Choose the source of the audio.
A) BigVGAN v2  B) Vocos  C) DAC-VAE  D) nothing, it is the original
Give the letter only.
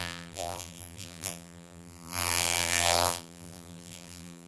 A